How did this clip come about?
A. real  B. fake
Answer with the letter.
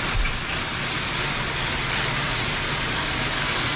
A